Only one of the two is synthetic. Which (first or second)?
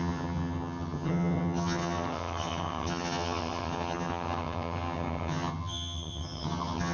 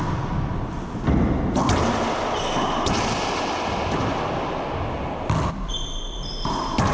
first